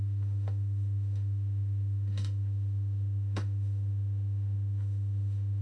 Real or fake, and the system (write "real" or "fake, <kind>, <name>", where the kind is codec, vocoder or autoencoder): fake, autoencoder, DAC-VAE